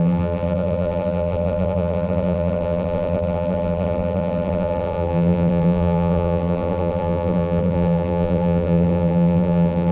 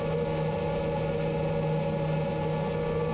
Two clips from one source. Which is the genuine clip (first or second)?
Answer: second